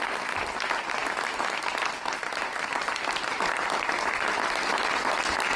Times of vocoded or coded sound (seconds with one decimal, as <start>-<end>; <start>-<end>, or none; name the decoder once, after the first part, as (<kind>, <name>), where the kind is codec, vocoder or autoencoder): 1.0-1.6 (autoencoder, DAC-VAE)